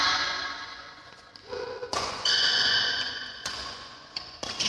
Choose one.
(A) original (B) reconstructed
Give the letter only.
B